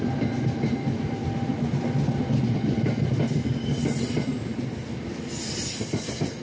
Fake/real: real